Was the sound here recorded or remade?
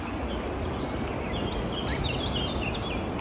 recorded